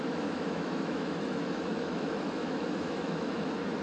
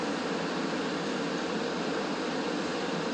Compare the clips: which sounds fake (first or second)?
first